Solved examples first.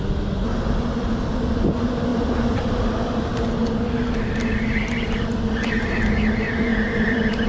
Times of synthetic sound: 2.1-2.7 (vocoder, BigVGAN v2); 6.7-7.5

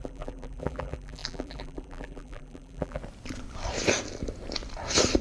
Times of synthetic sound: 0.0-3.0 (vocoder, BigVGAN v2)

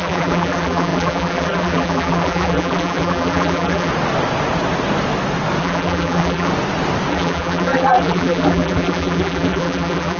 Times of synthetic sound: 0.0-3.9 (vocoder, BigVGAN v2); 5.6-6.5; 7.1-10.2

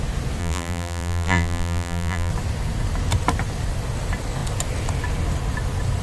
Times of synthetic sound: 0.4-2.3 (vocoder, BigVGAN v2)